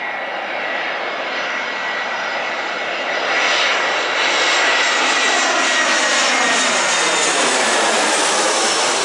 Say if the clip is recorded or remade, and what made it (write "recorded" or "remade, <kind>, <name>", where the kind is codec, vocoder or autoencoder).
recorded